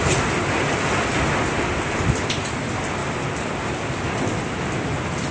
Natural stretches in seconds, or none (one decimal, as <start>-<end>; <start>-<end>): 0.0-5.3